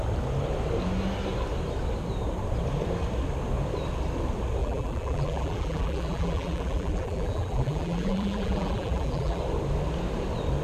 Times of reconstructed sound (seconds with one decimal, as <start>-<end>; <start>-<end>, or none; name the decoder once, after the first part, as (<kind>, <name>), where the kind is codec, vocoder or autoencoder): 4.6-9.4 (vocoder, BigVGAN v2)